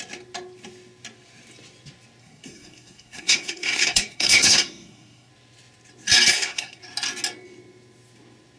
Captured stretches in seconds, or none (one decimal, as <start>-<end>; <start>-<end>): 0.0-2.2; 5.3-6.3; 6.8-8.6